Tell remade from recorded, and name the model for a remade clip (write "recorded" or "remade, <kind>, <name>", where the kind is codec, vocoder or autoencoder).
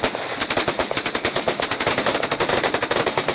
remade, vocoder, BigVGAN v2